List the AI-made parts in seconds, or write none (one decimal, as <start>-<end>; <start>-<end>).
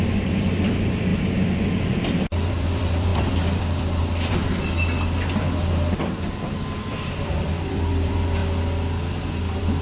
0.0-1.1; 2.5-4.4; 6.1-8.4; 9.1-9.8